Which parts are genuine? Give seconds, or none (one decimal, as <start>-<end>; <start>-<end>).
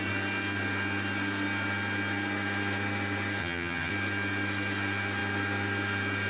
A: 0.0-3.4; 3.9-6.3